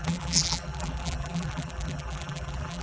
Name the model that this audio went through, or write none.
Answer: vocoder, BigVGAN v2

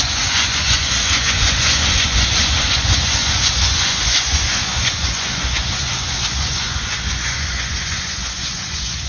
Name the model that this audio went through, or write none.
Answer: vocoder, Vocos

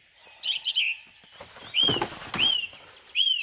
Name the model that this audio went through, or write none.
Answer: none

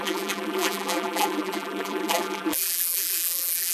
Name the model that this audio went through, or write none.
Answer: vocoder, BigVGAN v2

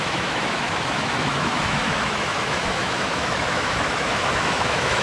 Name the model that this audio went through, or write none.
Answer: autoencoder, DAC-VAE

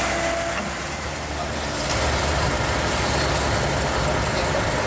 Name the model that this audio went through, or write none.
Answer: none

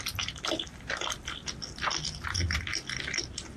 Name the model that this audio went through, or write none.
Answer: none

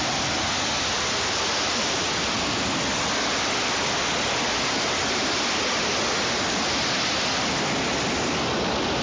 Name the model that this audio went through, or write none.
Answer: none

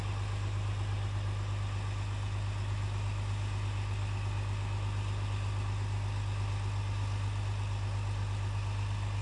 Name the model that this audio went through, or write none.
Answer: none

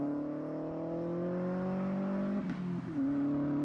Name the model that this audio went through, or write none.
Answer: none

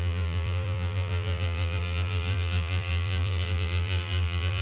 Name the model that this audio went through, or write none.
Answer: vocoder, BigVGAN v2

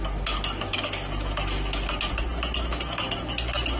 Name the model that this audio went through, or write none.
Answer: none